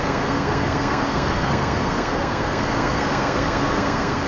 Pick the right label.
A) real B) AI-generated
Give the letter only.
B